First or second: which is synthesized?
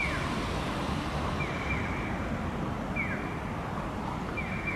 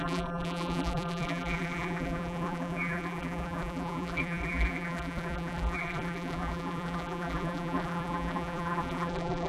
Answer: second